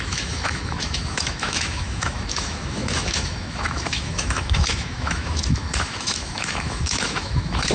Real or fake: fake